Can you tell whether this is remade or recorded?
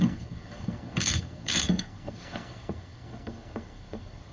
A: remade